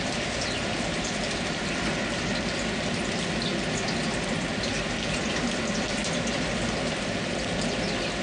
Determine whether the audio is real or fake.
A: real